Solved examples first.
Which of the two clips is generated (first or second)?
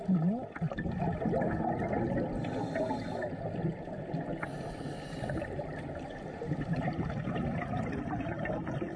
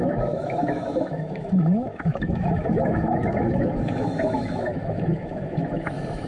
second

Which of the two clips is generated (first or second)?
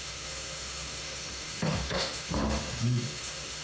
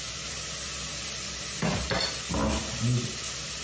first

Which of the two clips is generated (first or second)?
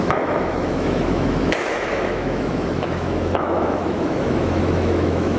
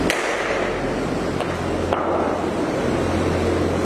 first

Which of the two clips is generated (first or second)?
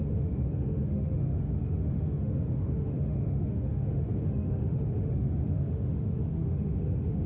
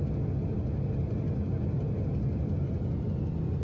first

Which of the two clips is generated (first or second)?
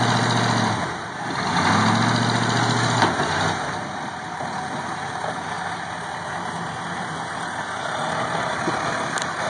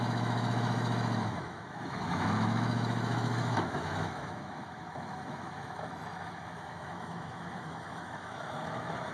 second